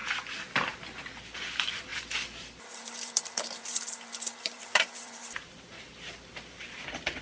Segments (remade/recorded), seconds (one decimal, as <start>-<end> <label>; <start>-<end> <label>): 0.0-1.2 recorded; 1.2-7.2 remade